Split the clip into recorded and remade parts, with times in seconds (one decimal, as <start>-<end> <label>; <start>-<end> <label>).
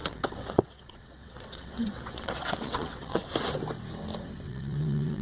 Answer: 0.0-3.2 remade; 3.2-4.5 recorded; 4.5-5.2 remade